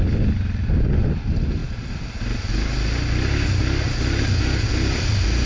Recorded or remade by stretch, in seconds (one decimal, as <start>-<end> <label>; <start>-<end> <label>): 0.0-5.5 recorded